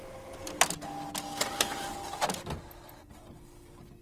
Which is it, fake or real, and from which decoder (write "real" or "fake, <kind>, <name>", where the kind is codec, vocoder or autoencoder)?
real